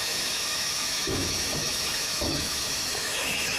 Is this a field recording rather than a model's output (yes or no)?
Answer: no